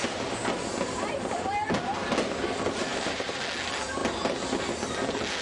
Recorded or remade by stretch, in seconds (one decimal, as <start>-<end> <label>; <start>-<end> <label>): 0.0-2.9 recorded; 2.9-3.4 remade; 3.4-5.4 recorded